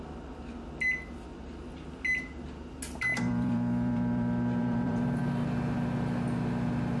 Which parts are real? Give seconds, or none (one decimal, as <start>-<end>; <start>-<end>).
0.0-3.1; 5.2-7.0